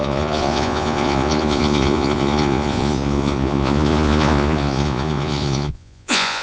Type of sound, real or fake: fake